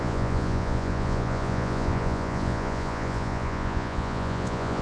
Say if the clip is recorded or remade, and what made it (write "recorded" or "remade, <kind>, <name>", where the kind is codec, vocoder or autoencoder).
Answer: remade, vocoder, Vocos